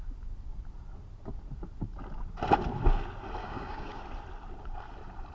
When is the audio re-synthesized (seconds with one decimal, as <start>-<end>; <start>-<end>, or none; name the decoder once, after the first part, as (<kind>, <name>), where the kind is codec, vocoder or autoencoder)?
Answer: 3.4-4.0 (codec, DAC)